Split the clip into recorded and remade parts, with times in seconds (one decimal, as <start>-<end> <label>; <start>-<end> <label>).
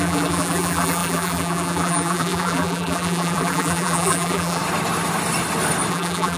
0.0-4.6 remade; 4.6-5.9 recorded; 5.9-6.4 remade